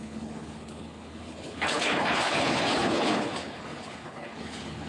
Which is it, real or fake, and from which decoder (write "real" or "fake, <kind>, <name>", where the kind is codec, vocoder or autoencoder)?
fake, codec, HILCodec